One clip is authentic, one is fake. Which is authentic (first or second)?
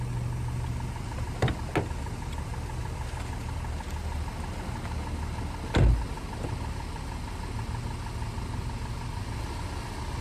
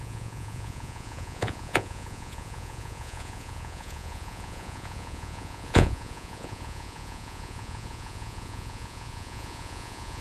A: first